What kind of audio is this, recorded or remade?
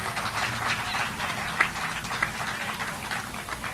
recorded